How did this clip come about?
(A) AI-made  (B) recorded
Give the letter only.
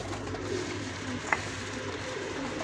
B